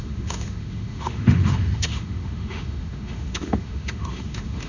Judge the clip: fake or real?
fake